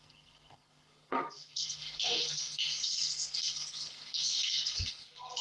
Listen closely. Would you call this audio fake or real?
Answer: fake